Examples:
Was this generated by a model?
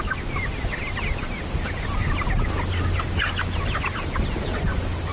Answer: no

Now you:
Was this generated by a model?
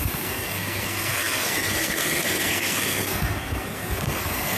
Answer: yes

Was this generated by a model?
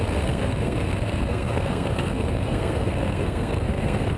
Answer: yes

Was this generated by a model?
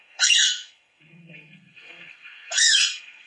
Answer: yes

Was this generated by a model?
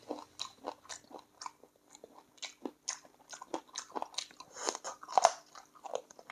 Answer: no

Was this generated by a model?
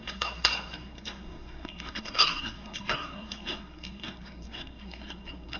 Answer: yes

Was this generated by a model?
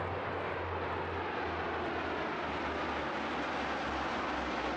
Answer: no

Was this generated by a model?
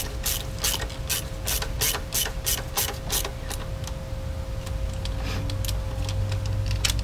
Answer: no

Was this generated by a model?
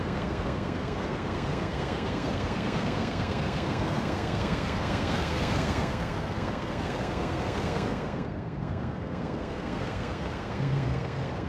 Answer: yes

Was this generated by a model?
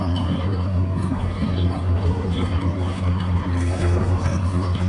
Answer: yes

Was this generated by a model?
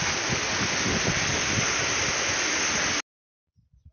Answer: no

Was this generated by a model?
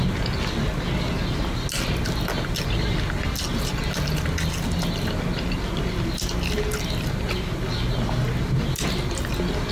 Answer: no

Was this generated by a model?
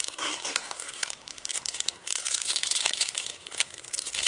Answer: yes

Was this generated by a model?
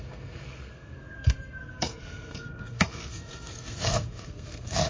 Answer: yes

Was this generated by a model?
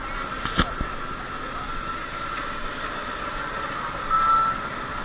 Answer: no